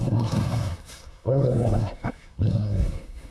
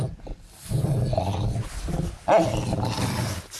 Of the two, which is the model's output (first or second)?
first